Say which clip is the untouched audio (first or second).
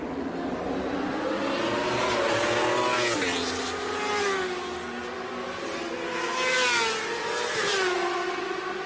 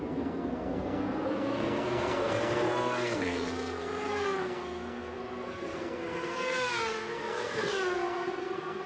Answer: first